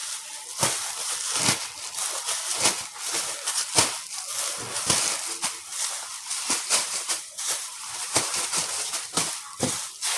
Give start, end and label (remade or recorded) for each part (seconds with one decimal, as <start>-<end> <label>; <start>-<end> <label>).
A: 0.0-6.3 recorded; 6.3-9.3 remade; 9.3-10.2 recorded